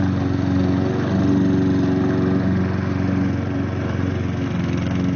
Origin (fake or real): real